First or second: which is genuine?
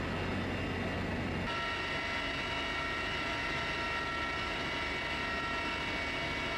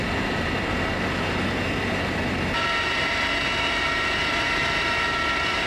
first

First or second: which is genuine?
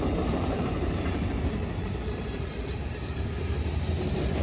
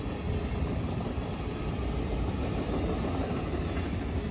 second